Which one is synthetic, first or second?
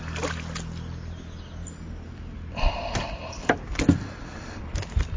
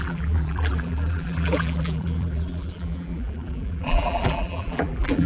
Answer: second